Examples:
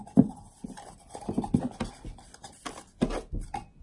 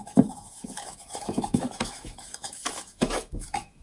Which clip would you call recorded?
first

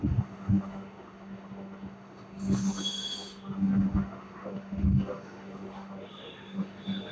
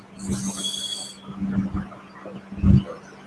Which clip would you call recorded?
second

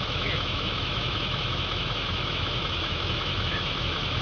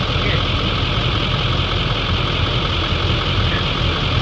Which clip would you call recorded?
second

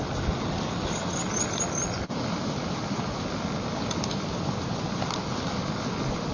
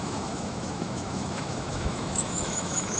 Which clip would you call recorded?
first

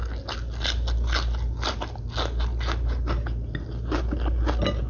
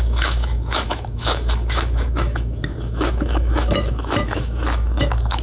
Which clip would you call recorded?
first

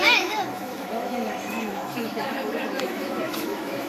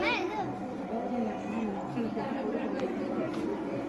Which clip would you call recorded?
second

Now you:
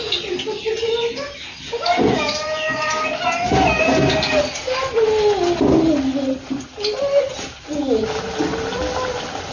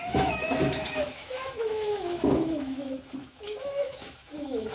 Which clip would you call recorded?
first